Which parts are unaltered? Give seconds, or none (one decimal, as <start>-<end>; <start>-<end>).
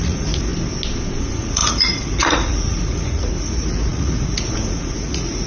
0.5-1.2